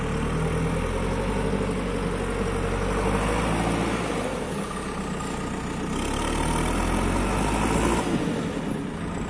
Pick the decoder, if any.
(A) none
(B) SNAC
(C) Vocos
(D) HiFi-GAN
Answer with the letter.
A